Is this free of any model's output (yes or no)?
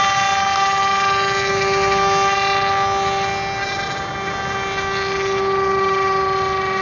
yes